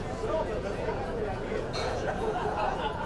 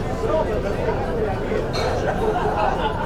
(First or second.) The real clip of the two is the second